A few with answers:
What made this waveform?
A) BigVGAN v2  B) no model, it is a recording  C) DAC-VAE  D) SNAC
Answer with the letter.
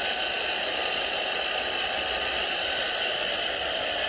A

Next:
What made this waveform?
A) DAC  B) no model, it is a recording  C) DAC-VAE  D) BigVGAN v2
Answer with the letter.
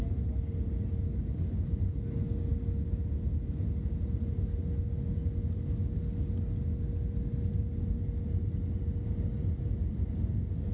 B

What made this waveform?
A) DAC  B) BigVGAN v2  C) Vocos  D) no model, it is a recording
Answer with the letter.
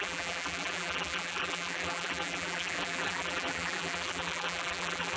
B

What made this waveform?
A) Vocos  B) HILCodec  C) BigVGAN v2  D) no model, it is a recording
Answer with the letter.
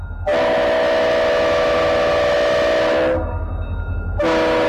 D